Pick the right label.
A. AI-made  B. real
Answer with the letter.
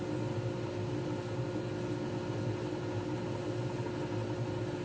B